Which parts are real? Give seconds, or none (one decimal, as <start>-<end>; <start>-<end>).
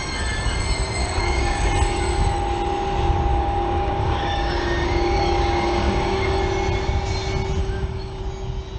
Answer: 0.0-1.0; 1.7-3.3; 6.4-7.6; 8.2-8.8